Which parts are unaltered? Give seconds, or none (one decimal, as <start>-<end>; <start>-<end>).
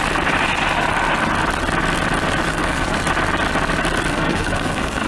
0.0-2.5; 3.0-4.1